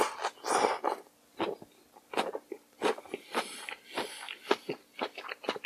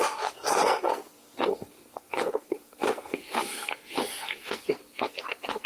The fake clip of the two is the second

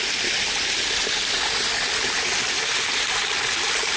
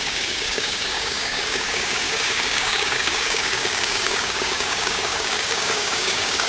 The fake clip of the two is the second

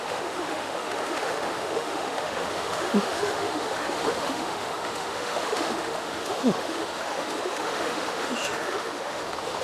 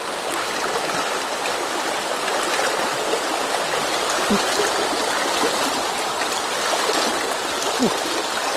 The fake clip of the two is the first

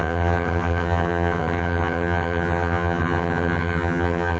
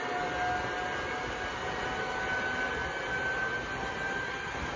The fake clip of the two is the first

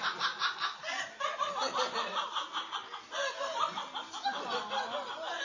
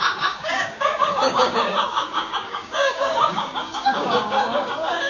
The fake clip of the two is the second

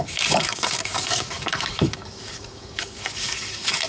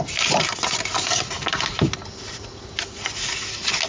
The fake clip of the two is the first